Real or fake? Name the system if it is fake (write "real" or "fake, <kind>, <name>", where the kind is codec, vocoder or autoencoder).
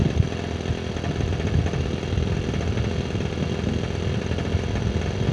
real